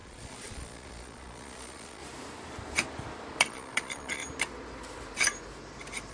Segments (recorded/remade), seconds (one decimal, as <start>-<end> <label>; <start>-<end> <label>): 0.0-2.0 remade; 2.0-3.4 recorded; 3.4-4.2 remade; 4.2-6.1 recorded